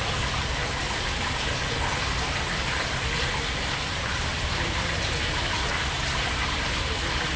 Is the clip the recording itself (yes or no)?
yes